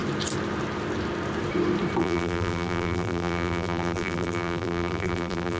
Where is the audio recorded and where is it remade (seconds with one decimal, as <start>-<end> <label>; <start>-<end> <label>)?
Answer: 0.0-2.0 recorded; 2.0-5.6 remade